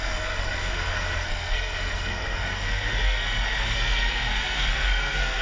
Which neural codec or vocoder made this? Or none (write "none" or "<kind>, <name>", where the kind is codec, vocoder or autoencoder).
codec, SNAC